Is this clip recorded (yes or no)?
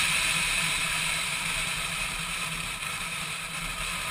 no